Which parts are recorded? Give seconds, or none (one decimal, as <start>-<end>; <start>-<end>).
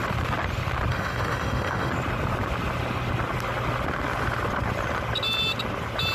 0.0-0.9; 1.9-6.1